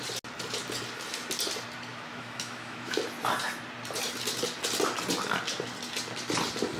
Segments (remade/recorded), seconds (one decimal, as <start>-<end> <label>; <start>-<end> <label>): 0.0-1.9 recorded; 1.9-3.0 remade; 3.0-6.8 recorded